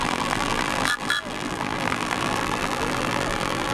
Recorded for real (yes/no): no